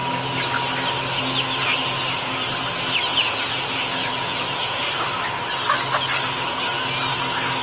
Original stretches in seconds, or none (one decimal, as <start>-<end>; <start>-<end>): 0.0-3.1; 5.0-7.6